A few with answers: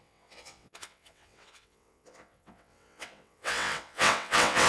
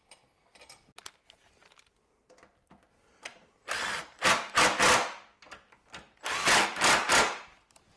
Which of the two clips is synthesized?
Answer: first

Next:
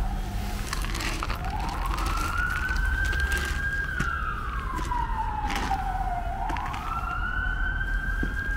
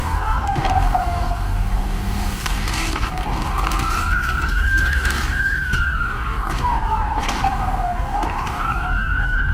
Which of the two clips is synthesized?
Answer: second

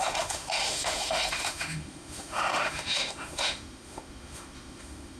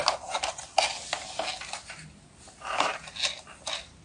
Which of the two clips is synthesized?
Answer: first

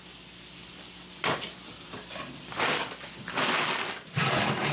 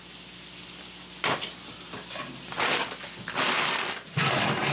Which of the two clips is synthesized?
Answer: first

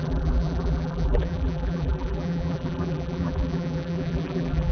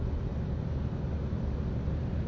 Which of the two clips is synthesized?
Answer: first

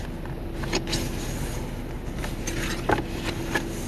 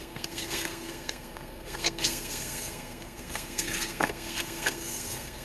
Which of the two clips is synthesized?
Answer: second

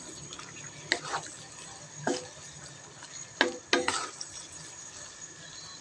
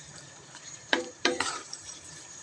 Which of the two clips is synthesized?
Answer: second